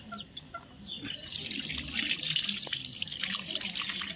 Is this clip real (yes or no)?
yes